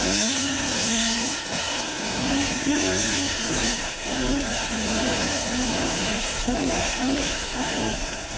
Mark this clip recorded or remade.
remade